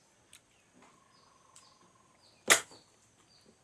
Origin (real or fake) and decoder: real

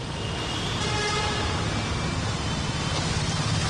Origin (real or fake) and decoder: real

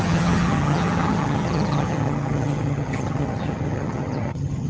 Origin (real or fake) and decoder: fake, vocoder, HiFi-GAN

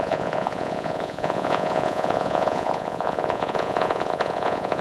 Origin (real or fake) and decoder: fake, vocoder, Vocos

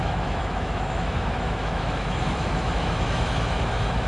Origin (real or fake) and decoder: fake, autoencoder, DAC-VAE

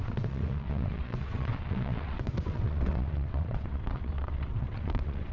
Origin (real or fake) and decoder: fake, vocoder, WaveNeXt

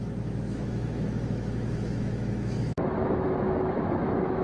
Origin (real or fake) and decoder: fake, autoencoder, DAC-VAE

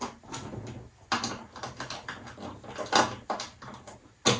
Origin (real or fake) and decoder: real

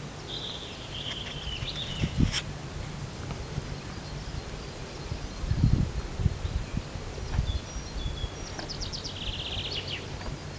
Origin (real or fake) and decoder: real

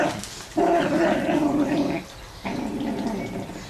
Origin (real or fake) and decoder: real